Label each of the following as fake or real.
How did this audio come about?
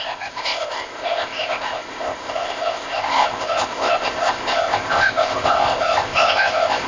fake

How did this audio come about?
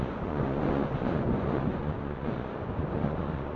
fake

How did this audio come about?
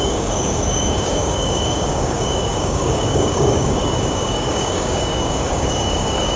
fake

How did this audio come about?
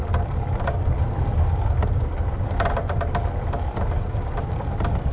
real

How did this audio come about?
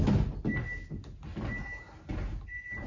real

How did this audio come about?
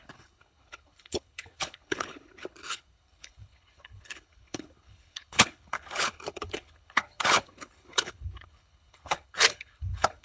fake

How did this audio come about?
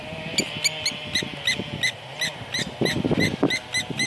real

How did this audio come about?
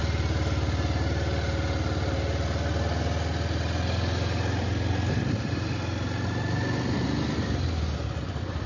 real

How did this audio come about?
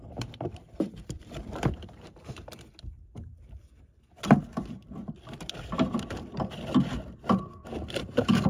fake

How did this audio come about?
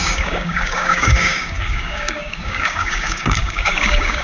fake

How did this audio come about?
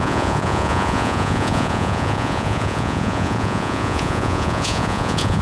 fake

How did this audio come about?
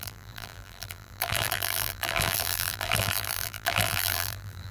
fake